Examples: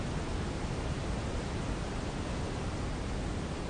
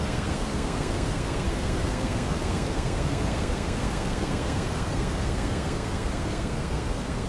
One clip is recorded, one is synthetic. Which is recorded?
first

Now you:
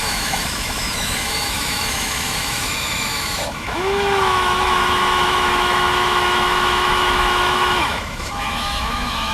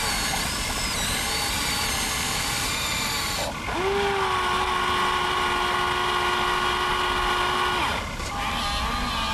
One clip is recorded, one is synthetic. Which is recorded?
second